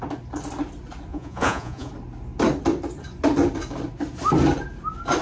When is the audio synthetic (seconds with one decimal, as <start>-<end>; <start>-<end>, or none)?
1.1-1.9